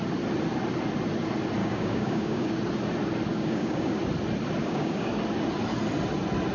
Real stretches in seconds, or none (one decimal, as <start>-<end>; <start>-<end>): 0.0-1.6; 2.5-3.3; 4.0-4.6; 5.1-6.5

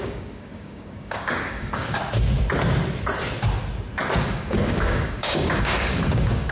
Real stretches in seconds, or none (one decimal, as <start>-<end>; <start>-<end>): 2.0-4.2

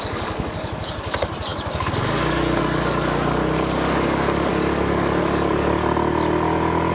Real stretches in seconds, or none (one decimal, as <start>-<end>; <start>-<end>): 5.8-6.9

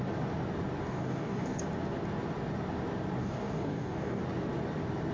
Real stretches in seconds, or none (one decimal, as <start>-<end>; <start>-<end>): 0.0-0.8; 1.6-3.2; 4.2-5.1

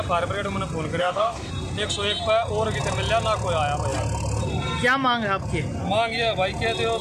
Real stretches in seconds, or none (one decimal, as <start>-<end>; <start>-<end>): 0.0-1.0; 1.5-7.0

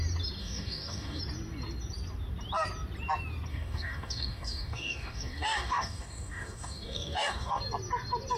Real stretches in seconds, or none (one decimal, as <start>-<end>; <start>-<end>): 0.0-0.4; 1.2-3.5; 7.6-8.4

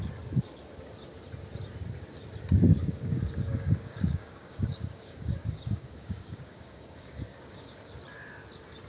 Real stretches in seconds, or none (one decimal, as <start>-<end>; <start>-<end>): 0.0-2.8; 7.9-8.9